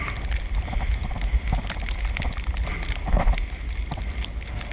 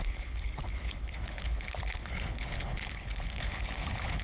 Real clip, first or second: first